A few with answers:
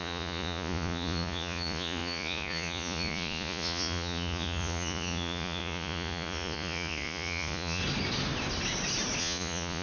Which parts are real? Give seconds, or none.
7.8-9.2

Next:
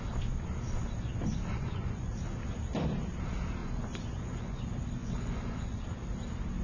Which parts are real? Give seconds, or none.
0.0-1.5; 2.1-3.6; 4.6-5.0; 5.8-6.6

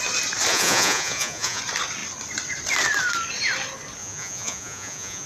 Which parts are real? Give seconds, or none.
0.0-0.5; 1.6-4.0